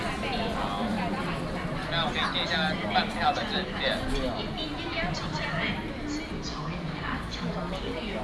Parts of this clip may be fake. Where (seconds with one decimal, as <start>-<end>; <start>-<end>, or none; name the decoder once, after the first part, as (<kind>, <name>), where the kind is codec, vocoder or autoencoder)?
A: 6.5-8.2 (codec, DAC)

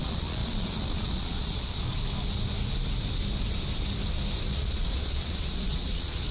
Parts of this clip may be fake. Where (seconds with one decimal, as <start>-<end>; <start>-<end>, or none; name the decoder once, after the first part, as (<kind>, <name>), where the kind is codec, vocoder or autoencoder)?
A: 0.0-1.9 (vocoder, Vocos); 4.5-6.3

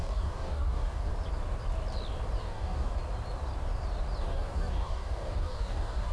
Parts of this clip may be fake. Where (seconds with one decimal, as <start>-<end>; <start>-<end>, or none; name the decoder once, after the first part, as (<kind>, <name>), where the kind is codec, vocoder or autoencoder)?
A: 0.0-1.1 (codec, DAC); 2.4-3.0; 4.2-6.1